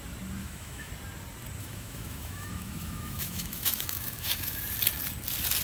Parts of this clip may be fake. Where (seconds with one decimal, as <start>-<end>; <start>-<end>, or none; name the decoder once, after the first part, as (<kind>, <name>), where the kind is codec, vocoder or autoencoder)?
0.4-0.9 (autoencoder, DAC-VAE); 1.6-4.6

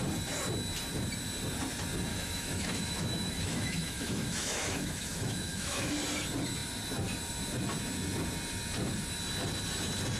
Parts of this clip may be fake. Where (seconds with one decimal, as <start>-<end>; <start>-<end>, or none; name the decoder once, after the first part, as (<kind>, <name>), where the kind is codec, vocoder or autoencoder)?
2.1-5.9 (autoencoder, DAC-VAE)